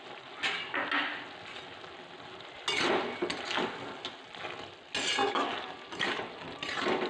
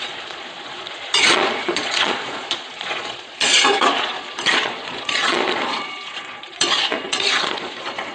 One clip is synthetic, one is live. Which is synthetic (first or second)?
second